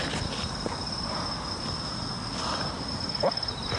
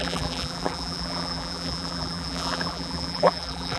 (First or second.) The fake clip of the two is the second